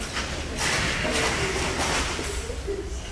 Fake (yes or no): no